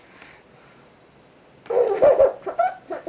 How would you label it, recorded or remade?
recorded